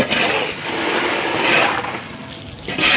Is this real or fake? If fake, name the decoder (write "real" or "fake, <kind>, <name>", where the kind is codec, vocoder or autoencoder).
real